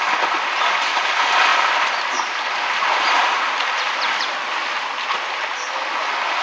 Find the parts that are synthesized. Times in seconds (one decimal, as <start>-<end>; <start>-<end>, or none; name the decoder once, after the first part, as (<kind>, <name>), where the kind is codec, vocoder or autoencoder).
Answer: 1.5-5.3 (vocoder, BigVGAN v2)

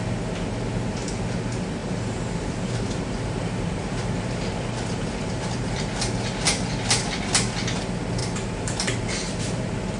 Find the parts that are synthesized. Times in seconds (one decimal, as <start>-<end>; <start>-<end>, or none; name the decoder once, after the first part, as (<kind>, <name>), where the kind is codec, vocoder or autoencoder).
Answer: 1.8-6.0 (vocoder, BigVGAN v2); 8.2-10.0

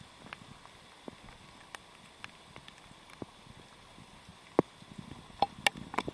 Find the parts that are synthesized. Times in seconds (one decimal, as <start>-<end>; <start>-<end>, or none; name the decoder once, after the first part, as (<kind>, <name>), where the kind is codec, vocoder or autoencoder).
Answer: none

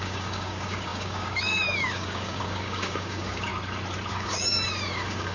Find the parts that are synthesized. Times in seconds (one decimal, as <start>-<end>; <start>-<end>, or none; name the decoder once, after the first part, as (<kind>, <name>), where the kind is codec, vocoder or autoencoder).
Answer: 0.0-3.5 (codec, DAC); 4.1-5.3

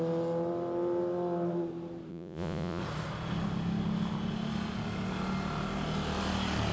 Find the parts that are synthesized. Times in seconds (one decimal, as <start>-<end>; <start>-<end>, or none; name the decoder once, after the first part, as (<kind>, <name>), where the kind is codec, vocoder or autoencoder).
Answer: 2.1-2.8 (vocoder, Vocos)

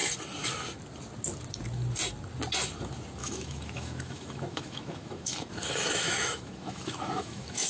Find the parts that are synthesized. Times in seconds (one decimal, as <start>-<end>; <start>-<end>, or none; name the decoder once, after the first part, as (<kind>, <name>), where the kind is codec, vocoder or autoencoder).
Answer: 3.2-7.7 (autoencoder, DAC-VAE)

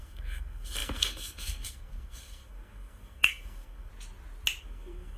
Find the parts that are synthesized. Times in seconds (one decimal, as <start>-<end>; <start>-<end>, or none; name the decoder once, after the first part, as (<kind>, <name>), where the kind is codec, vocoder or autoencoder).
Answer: 0.0-3.9 (codec, SNAC); 4.6-5.2